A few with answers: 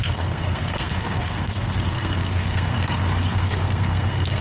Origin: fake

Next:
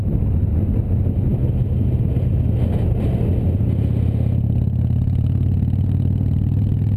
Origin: real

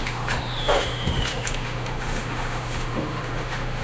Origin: fake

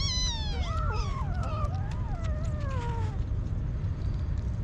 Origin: real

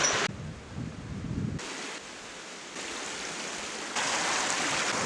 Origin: real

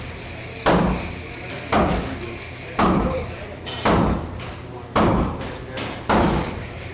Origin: real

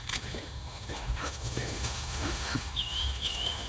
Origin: fake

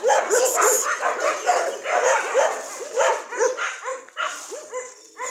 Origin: real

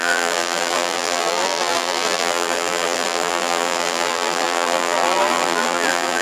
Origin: fake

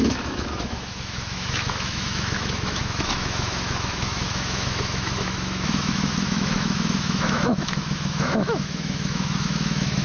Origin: fake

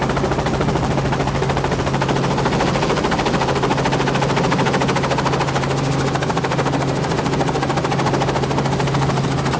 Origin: real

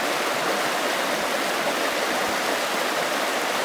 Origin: real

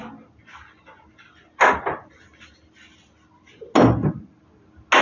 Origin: real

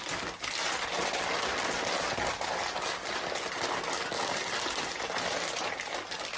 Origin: real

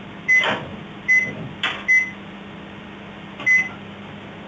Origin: real